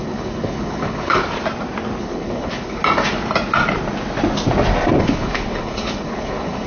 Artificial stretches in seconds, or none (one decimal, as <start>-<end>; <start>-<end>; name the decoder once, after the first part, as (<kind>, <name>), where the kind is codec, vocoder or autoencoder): 0.0-1.2 (codec, HILCodec); 2.0-2.8; 5.0-6.7